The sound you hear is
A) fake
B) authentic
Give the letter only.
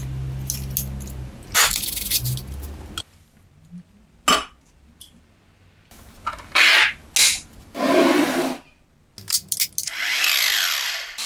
B